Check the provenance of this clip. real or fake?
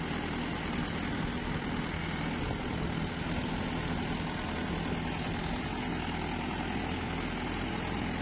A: real